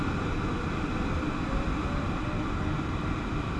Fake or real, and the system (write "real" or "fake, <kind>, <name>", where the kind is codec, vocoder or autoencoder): real